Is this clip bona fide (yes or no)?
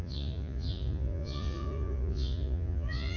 no